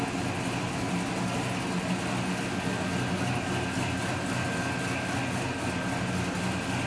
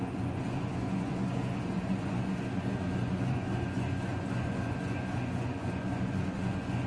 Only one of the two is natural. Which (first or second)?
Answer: first